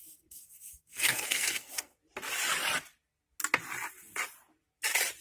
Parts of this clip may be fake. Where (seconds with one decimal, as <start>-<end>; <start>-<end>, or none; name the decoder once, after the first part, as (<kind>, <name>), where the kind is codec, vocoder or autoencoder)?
0.0-2.0 (codec, SNAC)